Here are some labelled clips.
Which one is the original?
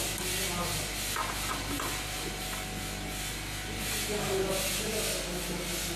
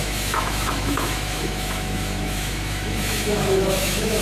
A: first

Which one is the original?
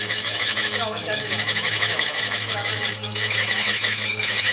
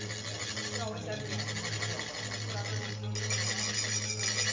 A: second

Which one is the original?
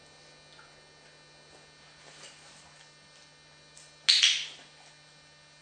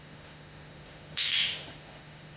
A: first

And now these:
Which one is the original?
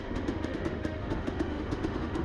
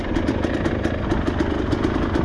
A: second